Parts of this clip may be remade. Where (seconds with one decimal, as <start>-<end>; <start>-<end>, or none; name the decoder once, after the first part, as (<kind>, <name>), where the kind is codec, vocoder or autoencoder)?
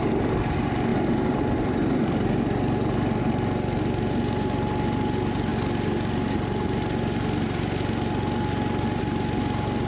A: 0.9-3.2 (vocoder, BigVGAN v2)